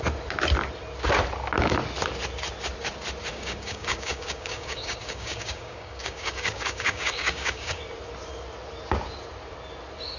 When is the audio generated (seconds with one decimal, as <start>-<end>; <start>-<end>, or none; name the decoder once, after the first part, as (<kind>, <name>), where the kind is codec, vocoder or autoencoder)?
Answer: 3.3-7.8 (codec, DAC)